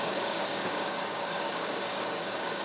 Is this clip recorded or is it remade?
remade